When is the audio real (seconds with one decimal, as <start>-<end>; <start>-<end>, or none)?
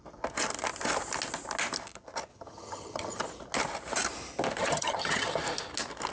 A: 0.0-2.3; 3.2-4.6; 5.4-6.1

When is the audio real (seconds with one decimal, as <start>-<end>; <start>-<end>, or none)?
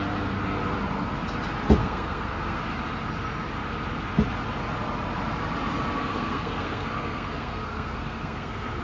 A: 0.0-1.8; 2.6-6.1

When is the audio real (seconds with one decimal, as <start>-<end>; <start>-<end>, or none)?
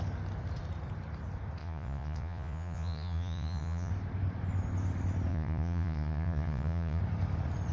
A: 0.0-1.6; 3.9-5.3; 7.0-7.7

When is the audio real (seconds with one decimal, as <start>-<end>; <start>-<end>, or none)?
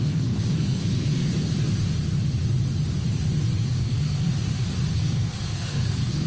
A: 1.2-3.7; 4.3-4.9